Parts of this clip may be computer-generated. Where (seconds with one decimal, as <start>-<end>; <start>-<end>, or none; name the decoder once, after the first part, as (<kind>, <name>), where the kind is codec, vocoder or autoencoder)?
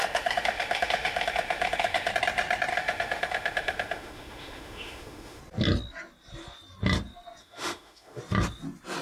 0.0-2.1 (autoencoder, DAC-VAE); 2.7-5.4; 7.4-8.2